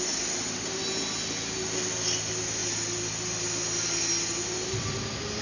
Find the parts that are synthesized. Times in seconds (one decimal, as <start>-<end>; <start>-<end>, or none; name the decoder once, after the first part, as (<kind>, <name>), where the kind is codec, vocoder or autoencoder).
none